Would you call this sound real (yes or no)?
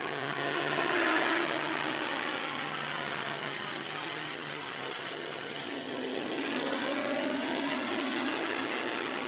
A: no